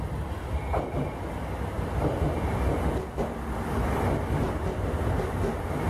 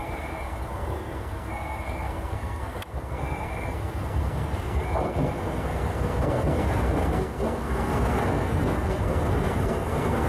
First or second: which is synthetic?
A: second